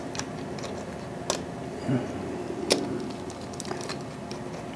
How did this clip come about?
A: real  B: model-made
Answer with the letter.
A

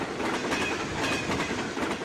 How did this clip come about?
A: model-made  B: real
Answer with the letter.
B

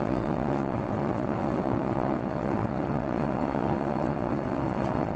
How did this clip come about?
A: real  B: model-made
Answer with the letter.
B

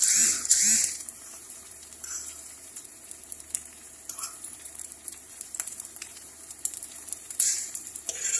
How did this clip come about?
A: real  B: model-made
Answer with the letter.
B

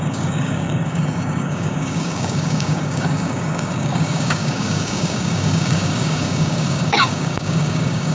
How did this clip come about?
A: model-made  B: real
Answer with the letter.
A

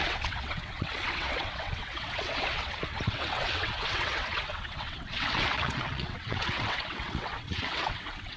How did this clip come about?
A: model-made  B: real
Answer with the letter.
A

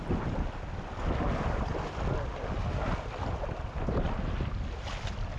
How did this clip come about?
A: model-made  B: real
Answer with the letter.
B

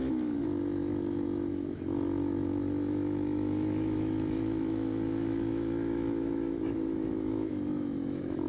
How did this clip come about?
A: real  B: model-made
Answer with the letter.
B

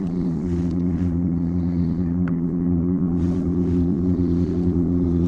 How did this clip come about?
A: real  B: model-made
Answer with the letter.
B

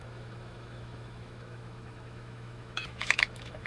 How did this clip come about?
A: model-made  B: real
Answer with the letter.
A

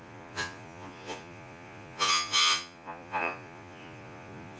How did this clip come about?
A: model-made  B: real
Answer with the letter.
A